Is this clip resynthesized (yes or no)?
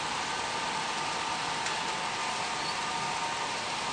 no